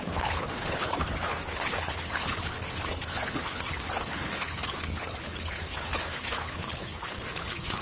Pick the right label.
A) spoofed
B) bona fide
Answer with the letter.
A